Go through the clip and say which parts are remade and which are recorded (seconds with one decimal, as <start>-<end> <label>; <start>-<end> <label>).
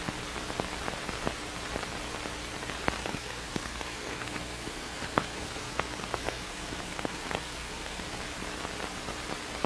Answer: 0.0-3.0 recorded; 3.0-8.2 remade; 8.2-9.7 recorded